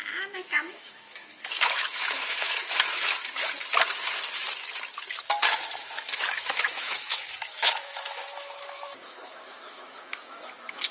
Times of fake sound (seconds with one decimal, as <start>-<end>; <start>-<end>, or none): 0.0-3.2; 5.8-10.9